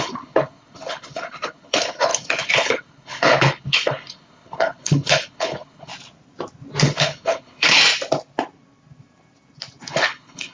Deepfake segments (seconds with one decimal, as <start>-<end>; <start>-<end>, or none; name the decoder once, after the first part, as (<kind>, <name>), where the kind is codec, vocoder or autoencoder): 0.0-5.9 (codec, HILCodec); 6.8-7.8; 9.9-10.5